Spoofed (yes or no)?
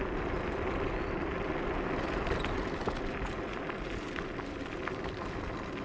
no